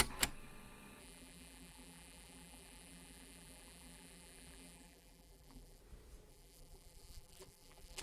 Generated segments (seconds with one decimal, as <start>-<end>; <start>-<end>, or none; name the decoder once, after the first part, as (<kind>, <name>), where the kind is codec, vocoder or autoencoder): 1.0-5.8 (vocoder, BigVGAN v2); 6.3-8.0

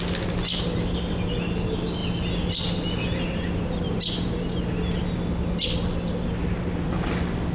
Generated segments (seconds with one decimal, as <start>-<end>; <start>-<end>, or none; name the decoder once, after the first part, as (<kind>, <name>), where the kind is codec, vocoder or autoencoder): none

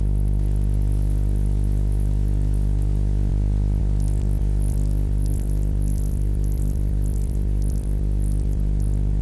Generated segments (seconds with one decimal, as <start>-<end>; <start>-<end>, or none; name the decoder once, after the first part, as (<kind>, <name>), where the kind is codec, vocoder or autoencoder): 0.0-3.3 (vocoder, BigVGAN v2); 3.8-9.2

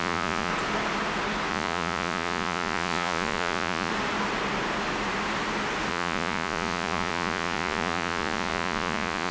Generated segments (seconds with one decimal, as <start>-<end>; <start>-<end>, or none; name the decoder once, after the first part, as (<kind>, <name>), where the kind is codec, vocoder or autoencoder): 0.0-0.5 (vocoder, Vocos); 1.5-3.9; 5.9-9.3

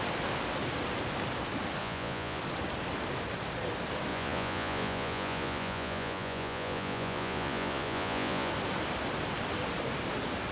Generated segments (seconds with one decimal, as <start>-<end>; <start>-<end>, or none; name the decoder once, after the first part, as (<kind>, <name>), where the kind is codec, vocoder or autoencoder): 1.8-2.4 (vocoder, Vocos); 4.1-8.5

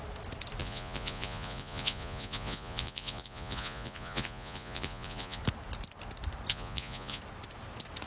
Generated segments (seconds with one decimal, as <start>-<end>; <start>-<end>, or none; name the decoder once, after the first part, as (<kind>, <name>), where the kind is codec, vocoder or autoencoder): 0.6-5.4 (vocoder, Vocos); 6.5-7.2

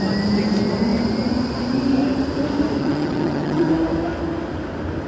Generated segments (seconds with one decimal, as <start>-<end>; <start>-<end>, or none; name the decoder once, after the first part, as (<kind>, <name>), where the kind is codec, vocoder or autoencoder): 2.8-3.7 (vocoder, HiFi-GAN)